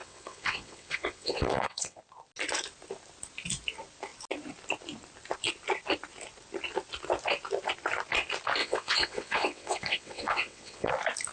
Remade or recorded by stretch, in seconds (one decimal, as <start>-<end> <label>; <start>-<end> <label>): 0.0-2.0 remade; 2.0-8.6 recorded; 8.6-10.9 remade; 10.9-11.3 recorded